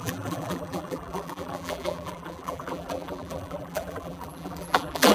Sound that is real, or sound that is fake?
fake